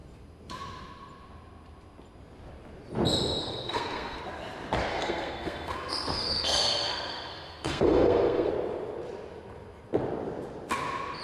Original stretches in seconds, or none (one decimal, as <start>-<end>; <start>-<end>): 0.0-3.4; 4.2-4.9; 8.5-11.2